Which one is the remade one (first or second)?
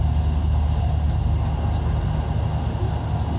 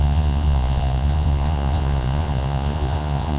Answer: second